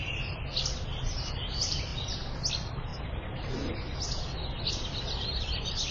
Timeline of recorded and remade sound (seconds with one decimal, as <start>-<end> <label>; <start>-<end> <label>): 0.0-1.9 remade; 1.9-2.5 recorded; 2.5-2.9 remade; 2.9-4.7 recorded; 4.7-5.9 remade